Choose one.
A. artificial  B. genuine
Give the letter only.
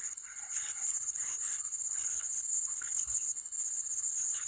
A